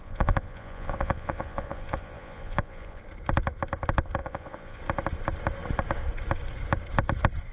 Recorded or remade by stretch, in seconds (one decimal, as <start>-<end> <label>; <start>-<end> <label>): 0.0-3.0 remade; 3.0-4.2 recorded; 4.2-4.8 remade; 4.8-7.5 recorded

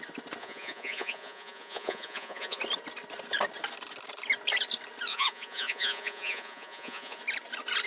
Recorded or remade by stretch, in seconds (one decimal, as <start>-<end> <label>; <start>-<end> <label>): 0.0-0.4 recorded; 0.4-2.6 remade; 2.6-5.1 recorded; 5.1-7.2 remade; 7.2-7.9 recorded